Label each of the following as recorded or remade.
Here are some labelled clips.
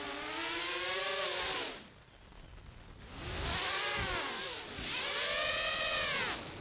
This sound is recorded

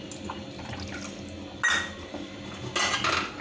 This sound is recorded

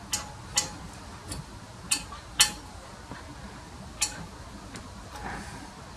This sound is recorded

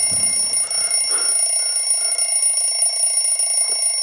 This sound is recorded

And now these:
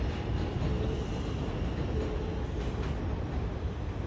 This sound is recorded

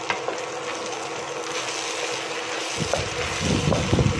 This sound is recorded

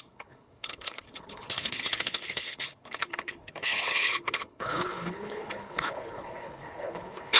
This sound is remade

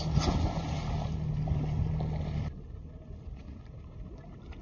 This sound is recorded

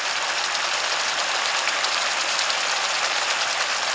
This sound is recorded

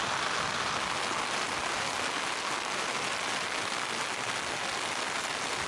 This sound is recorded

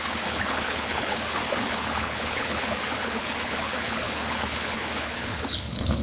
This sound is remade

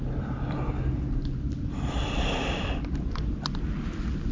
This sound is recorded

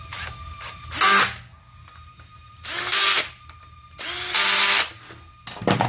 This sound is recorded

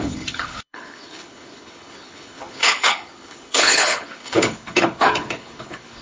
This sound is remade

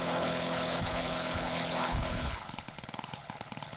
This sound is remade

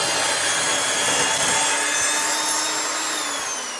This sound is recorded